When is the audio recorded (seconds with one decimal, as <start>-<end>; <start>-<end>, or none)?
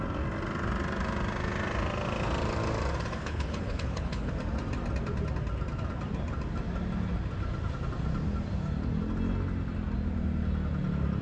0.0-3.2; 4.3-11.2